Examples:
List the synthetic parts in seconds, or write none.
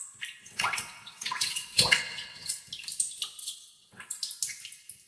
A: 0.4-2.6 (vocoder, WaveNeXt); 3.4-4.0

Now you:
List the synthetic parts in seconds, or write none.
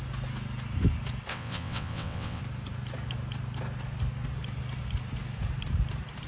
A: 1.3-2.4 (vocoder, WaveNeXt)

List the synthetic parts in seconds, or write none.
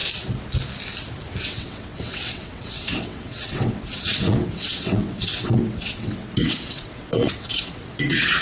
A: 1.4-8.4 (vocoder, WaveNeXt)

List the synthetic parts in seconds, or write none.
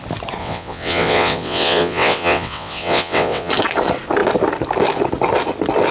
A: 0.4-3.5 (vocoder, WaveNeXt)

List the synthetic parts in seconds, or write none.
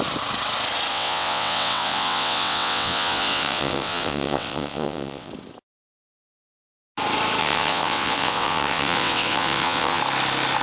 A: 0.9-5.3 (vocoder, WaveNeXt); 7.4-10.0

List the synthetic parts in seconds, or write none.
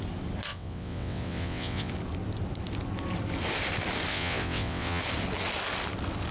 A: 0.5-1.9 (vocoder, WaveNeXt); 4.1-5.0